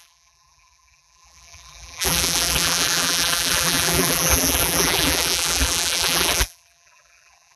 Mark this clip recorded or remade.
remade